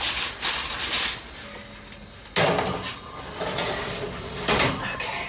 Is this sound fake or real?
real